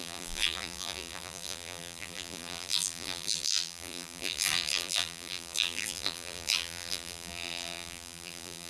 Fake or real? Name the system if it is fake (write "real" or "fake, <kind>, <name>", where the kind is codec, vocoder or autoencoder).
fake, vocoder, BigVGAN v2